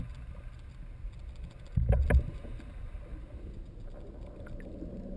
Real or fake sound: real